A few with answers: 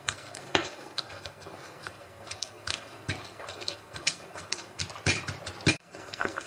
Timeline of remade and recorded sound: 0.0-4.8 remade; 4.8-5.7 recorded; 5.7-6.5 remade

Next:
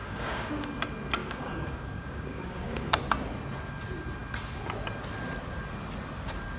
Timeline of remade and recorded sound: 0.0-0.5 remade; 0.5-1.2 recorded; 1.2-3.0 remade; 3.0-6.6 recorded

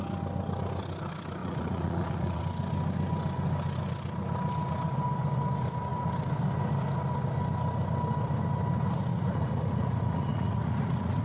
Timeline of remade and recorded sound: 0.0-1.4 recorded; 1.4-2.4 remade; 2.4-9.1 recorded; 9.1-11.2 remade

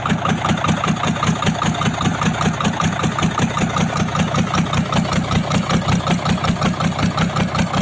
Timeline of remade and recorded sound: 0.0-7.8 recorded